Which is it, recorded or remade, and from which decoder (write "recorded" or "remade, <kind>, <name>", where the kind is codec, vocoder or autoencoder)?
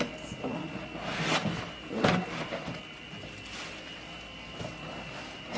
recorded